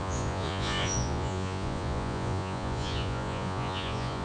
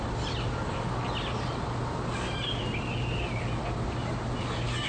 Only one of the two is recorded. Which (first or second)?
second